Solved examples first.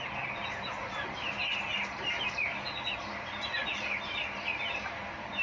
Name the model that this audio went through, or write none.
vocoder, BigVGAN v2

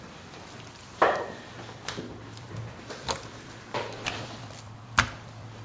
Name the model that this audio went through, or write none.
vocoder, BigVGAN v2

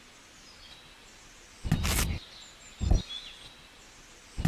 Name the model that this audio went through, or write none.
none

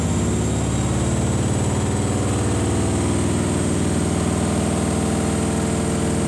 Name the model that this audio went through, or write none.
none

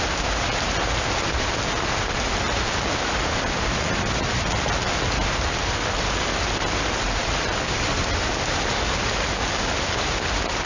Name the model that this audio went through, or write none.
vocoder, BigVGAN v2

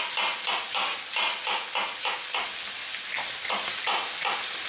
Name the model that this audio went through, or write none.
none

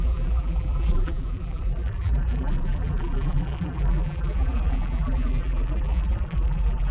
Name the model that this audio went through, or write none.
vocoder, BigVGAN v2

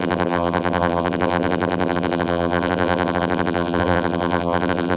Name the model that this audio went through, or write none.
vocoder, BigVGAN v2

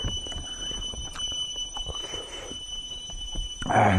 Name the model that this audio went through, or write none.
vocoder, BigVGAN v2